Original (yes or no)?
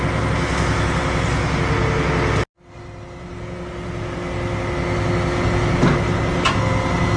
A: yes